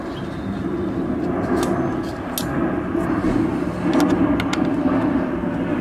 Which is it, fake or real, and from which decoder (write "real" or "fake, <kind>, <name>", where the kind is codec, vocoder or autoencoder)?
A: real